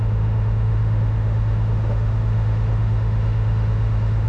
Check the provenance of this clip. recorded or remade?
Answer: remade